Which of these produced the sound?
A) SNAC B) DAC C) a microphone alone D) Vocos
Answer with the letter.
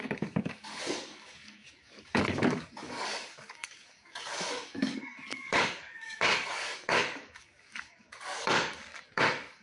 B